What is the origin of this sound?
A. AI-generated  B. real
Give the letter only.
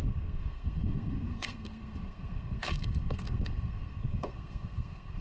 A